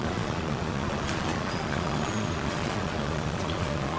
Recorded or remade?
remade